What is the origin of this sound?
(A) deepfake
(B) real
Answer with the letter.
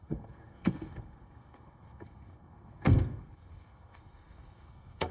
A